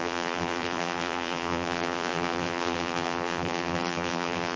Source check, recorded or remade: remade